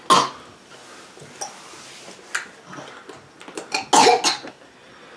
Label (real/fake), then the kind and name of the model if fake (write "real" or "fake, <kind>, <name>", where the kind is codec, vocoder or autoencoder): real